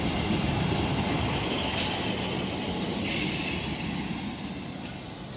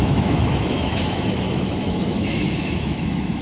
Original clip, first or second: first